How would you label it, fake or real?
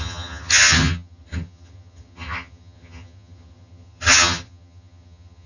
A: fake